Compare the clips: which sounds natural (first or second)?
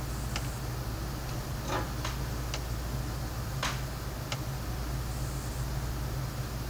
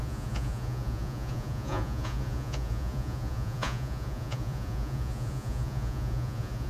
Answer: first